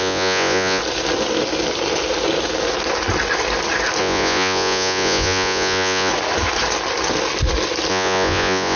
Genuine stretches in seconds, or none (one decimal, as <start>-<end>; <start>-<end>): 0.8-4.0; 6.1-7.9